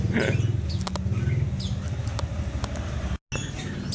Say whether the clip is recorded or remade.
recorded